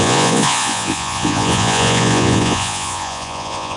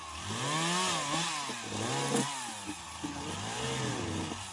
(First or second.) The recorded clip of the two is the second